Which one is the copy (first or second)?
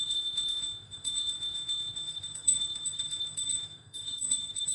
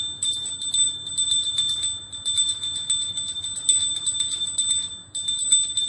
first